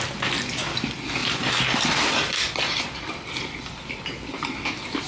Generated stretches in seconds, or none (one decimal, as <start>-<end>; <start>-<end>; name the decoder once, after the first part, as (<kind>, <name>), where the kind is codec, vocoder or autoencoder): 1.2-4.3 (vocoder, BigVGAN v2)